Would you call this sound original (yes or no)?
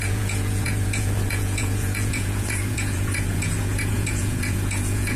no